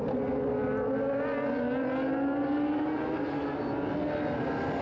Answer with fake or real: real